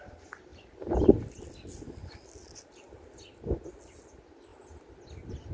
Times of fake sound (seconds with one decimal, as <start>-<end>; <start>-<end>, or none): none